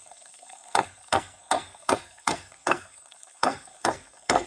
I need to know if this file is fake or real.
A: fake